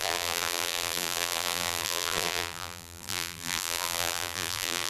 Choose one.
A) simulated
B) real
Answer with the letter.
A